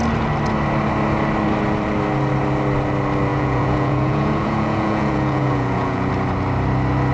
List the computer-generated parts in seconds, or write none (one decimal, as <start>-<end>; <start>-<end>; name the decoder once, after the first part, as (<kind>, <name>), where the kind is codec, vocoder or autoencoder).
3.3-6.1 (vocoder, Vocos)